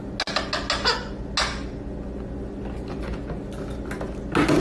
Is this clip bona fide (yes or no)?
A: yes